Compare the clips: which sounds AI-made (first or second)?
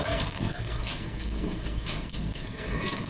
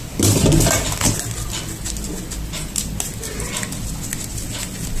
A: first